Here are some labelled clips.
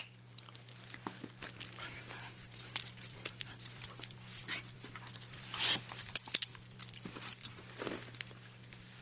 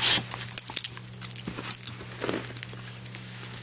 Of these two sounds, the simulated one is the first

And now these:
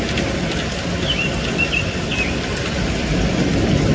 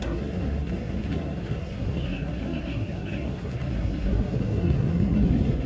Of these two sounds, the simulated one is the second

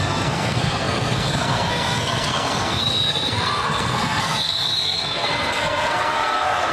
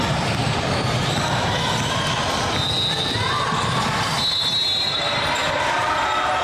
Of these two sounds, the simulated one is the first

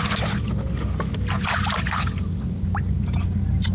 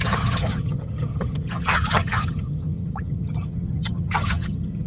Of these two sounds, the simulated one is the second